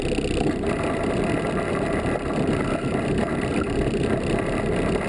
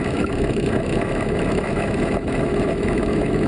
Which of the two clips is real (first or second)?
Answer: first